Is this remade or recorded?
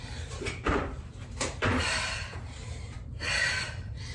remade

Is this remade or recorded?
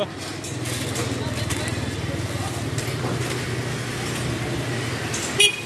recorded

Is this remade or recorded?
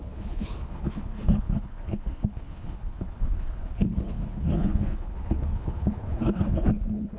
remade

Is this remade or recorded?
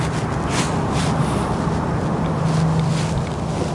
recorded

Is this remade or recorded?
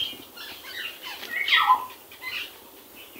recorded